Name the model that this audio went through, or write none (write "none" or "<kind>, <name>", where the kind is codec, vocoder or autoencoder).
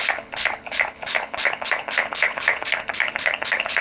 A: codec, HILCodec